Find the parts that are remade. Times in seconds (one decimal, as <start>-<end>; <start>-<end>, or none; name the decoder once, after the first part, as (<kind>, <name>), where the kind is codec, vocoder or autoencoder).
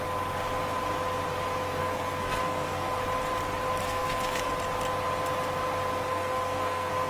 1.8-3.0 (codec, SNAC); 3.8-4.5; 6.1-7.1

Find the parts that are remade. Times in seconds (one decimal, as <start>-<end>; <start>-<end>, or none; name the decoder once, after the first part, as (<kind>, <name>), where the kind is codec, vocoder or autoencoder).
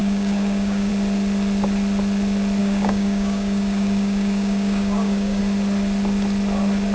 0.0-0.9 (codec, DAC); 2.6-5.4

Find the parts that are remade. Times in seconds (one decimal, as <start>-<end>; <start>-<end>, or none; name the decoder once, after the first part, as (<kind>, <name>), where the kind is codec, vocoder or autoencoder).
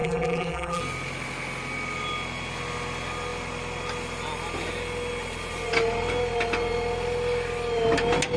0.0-0.8 (vocoder, BigVGAN v2)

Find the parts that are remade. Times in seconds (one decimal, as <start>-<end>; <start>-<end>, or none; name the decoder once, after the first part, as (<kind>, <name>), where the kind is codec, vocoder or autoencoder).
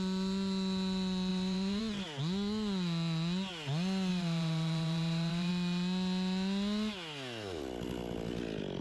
1.3-1.8 (vocoder, BigVGAN v2); 4.1-5.5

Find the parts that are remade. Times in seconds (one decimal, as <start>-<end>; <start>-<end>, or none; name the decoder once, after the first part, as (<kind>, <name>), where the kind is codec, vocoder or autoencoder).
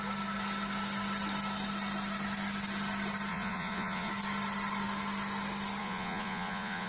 3.3-4.1 (vocoder, Vocos); 5.8-6.9